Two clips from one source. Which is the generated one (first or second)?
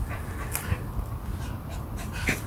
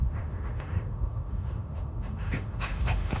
second